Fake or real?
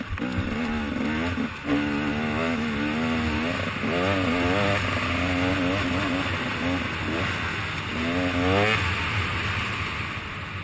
real